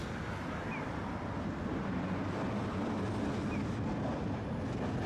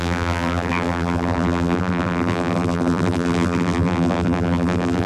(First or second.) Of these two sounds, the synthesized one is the second